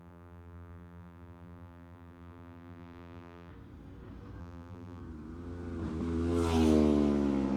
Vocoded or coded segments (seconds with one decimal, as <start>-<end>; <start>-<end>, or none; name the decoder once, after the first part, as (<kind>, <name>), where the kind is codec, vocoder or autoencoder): 0.0-3.5 (vocoder, BigVGAN v2); 4.4-5.0